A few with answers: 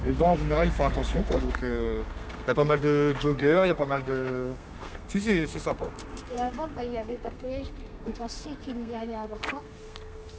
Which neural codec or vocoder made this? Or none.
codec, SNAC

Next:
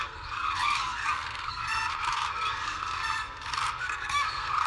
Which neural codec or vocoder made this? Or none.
codec, SNAC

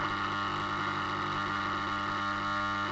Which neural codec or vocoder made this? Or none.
none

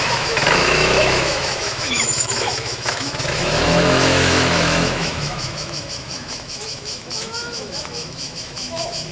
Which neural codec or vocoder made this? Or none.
autoencoder, DAC-VAE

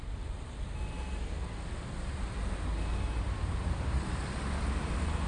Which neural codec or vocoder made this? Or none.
none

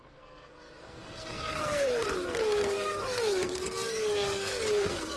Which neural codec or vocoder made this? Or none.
codec, SNAC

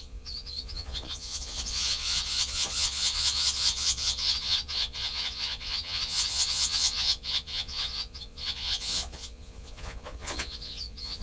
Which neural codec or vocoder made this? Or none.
vocoder, Vocos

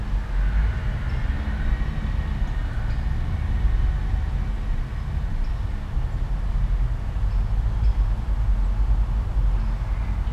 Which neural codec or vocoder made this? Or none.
none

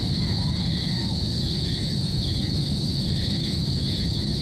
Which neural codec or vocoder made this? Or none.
codec, DAC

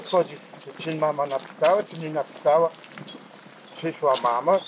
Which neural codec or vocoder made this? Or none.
none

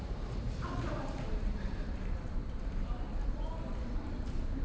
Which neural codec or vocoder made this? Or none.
vocoder, BigVGAN v2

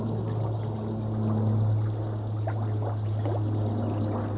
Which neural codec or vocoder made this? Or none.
none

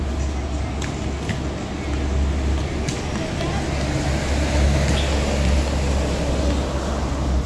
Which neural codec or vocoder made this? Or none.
none